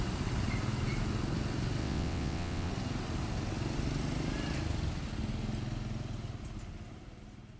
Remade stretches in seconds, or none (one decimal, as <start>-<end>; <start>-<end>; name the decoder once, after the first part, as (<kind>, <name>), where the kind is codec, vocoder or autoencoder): 1.8-2.7 (vocoder, WaveNeXt)